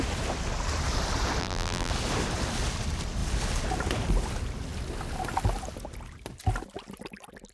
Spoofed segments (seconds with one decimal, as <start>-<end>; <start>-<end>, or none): 1.4-1.9